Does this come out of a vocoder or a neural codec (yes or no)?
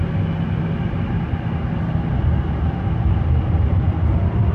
no